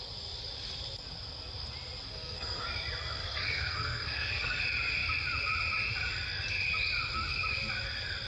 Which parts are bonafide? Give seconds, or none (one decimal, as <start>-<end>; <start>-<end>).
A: 0.0-2.1; 2.6-3.2; 4.6-8.3